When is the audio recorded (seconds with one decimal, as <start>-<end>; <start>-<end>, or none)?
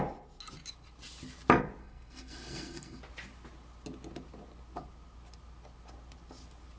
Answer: 0.0-1.8; 3.0-6.8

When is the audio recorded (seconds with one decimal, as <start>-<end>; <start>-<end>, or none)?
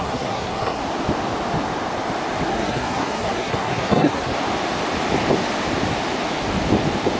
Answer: 0.8-2.5; 4.3-7.2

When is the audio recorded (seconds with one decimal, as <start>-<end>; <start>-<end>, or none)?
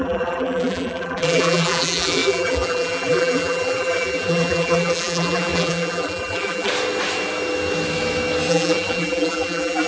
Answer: 6.7-8.5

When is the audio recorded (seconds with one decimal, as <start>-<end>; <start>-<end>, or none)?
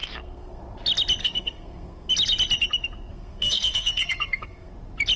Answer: 0.6-1.2; 2.1-3.1; 4.7-5.2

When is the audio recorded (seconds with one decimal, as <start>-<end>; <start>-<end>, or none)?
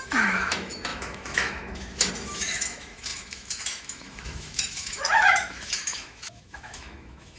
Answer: none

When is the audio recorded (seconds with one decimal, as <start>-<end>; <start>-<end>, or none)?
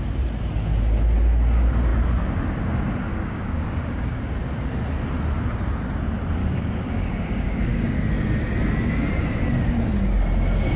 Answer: 0.0-3.1; 4.2-6.4; 8.0-10.8